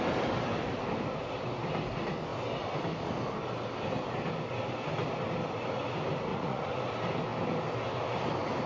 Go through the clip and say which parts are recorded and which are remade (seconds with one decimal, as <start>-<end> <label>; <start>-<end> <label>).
0.0-6.3 recorded; 6.3-6.8 remade; 6.8-8.7 recorded